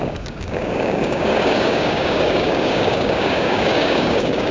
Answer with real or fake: fake